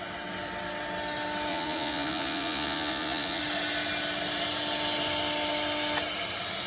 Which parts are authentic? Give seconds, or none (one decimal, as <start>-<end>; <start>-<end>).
0.0-1.5; 3.4-6.7